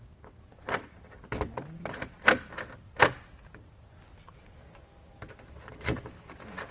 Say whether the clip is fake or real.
real